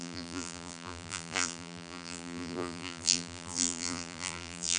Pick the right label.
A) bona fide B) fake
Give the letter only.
B